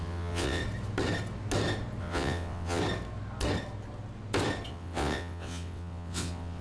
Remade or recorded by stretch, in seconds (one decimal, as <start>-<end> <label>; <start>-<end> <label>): 0.0-0.6 remade; 0.6-2.0 recorded; 2.0-2.8 remade; 2.8-4.7 recorded; 4.7-6.6 remade